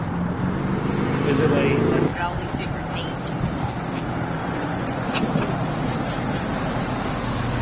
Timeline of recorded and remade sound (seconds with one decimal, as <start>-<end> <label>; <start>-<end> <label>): 0.0-4.4 recorded; 4.4-5.1 remade; 5.1-7.6 recorded